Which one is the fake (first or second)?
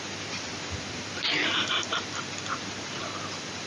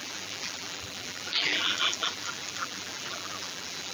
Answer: second